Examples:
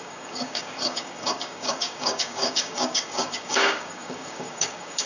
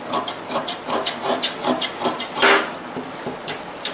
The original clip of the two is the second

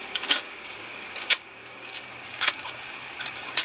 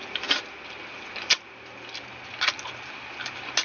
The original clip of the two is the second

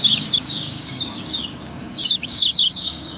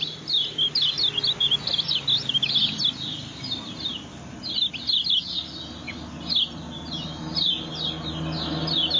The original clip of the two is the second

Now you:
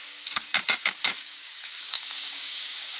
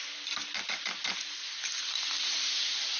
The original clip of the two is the second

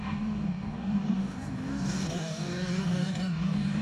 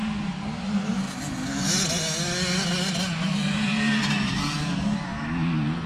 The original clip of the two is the second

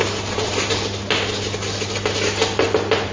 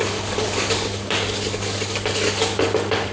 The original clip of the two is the first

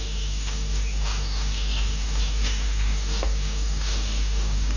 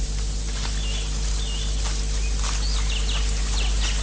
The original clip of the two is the second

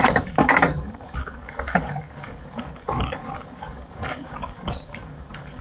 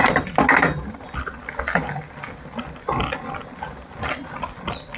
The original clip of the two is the second